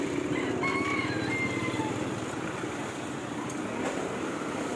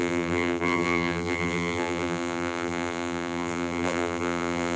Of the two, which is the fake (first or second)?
second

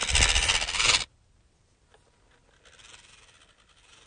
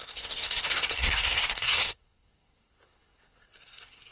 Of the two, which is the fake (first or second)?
second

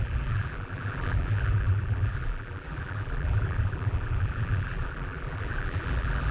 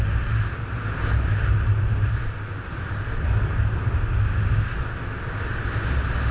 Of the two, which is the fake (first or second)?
first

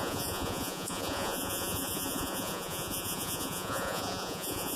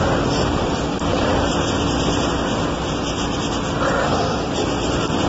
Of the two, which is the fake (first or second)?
first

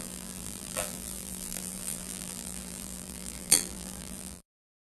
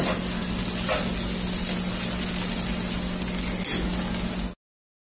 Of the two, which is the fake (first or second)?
first